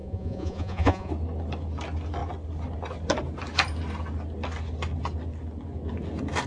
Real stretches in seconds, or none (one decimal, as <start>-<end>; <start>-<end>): 1.1-6.5